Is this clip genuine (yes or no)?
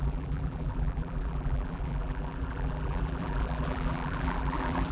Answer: no